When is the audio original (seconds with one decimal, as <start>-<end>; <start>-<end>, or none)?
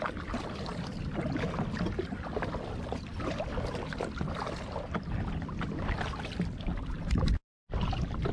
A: 0.0-8.3